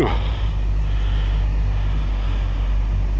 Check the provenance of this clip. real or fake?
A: real